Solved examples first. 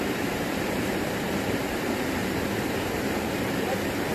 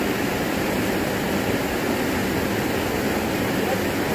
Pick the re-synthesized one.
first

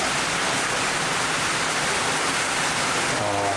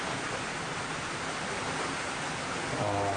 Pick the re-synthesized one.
second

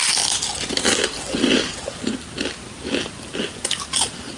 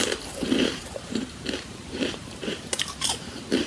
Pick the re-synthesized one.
second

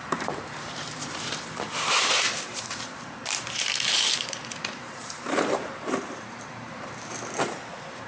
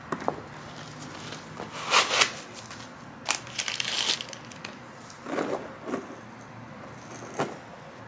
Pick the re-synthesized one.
first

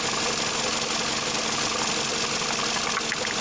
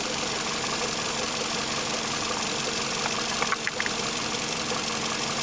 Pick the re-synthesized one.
second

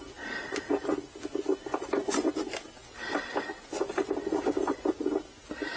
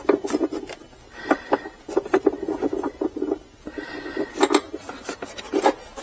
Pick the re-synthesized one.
second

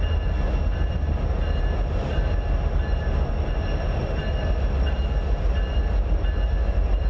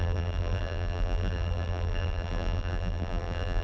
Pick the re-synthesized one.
second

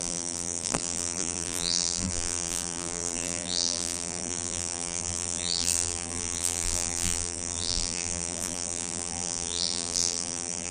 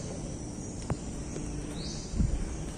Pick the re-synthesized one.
first